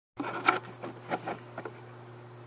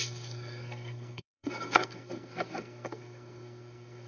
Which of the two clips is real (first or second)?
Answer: first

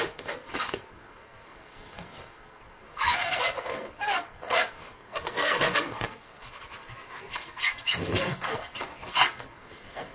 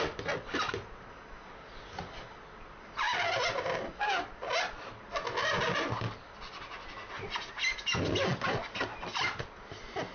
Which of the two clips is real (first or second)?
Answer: second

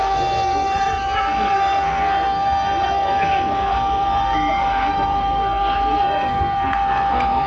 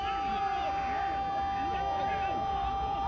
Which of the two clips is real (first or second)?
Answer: second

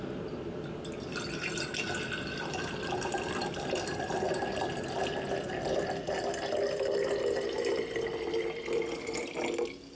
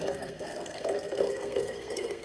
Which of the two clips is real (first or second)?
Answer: first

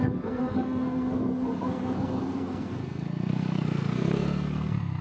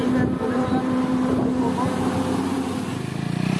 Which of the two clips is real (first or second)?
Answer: second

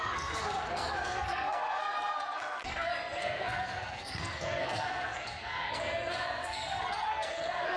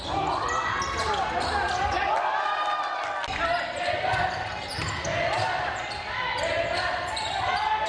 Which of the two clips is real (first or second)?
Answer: second